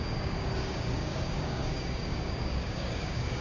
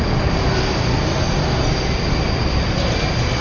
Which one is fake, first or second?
first